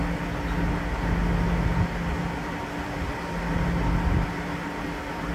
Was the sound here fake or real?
real